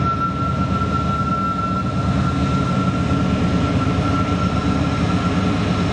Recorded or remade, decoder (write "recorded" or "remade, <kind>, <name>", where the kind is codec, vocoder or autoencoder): recorded